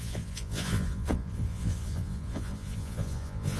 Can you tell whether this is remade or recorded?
remade